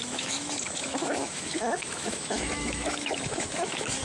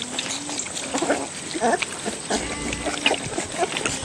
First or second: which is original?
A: second